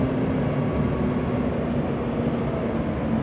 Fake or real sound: real